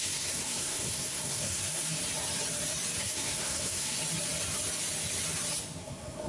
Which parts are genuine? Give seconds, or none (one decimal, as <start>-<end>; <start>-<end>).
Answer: 2.0-3.0; 4.0-5.8